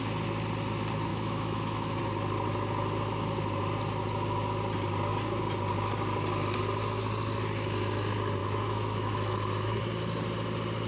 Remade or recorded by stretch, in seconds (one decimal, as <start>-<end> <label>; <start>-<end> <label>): 0.0-1.1 recorded; 1.1-2.0 remade; 2.0-8.4 recorded; 8.4-9.8 remade; 9.8-10.9 recorded